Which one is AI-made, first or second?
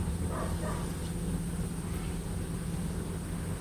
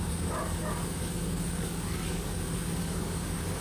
second